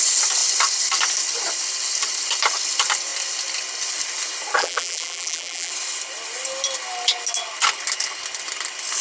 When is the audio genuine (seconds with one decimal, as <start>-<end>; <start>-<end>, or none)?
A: 0.0-4.6; 5.7-9.0